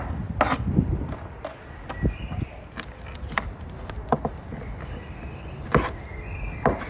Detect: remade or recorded recorded